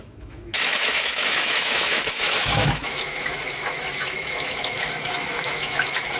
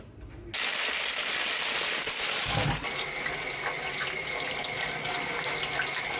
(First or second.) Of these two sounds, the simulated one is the first